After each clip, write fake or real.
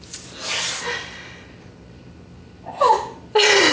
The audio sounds real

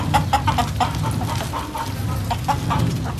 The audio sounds real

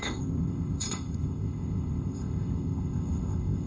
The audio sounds fake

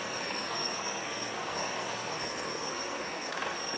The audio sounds fake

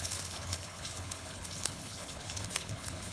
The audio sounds fake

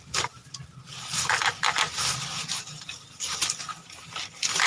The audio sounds real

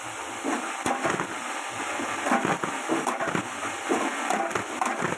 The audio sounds real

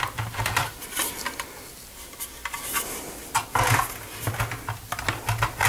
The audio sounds real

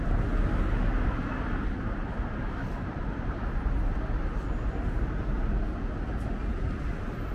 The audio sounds real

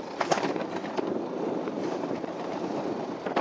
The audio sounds fake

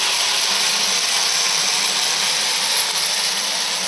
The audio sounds real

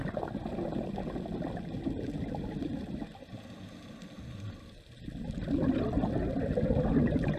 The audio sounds real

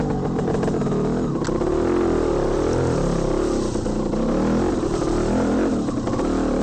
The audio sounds real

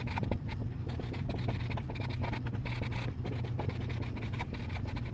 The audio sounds real